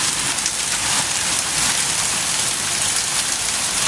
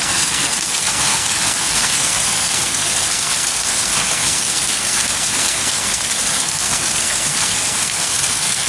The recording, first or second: first